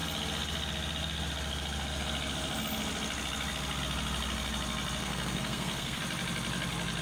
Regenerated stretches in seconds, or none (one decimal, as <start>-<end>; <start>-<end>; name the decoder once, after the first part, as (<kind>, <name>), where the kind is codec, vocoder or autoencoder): 5.0-6.0 (codec, SNAC)